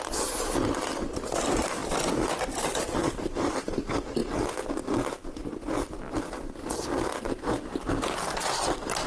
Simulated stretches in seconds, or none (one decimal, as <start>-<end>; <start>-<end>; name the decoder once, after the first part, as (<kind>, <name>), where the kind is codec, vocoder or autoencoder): 0.0-4.2 (vocoder, BigVGAN v2); 7.4-9.1